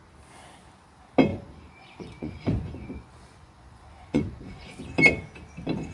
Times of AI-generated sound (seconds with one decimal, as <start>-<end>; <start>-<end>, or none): 1.3-4.8